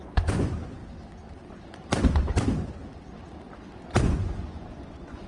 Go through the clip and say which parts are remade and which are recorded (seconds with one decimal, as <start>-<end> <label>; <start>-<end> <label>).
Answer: 0.0-0.8 remade; 0.8-4.0 recorded; 4.0-5.3 remade